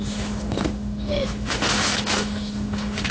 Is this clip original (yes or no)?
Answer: no